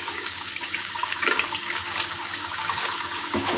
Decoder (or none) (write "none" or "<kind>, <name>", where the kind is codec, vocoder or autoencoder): codec, DAC